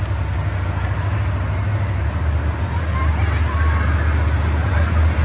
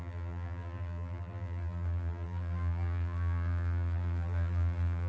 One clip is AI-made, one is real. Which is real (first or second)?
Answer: first